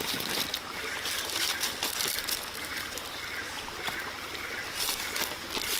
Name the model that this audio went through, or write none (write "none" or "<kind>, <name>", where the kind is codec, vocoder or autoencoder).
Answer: none